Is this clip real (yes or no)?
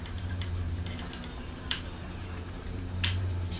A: no